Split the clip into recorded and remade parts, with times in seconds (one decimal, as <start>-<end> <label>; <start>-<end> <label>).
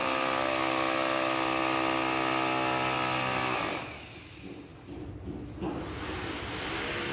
0.0-4.2 recorded; 4.2-4.7 remade; 4.7-5.7 recorded; 5.7-7.1 remade